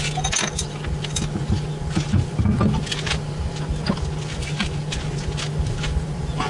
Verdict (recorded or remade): recorded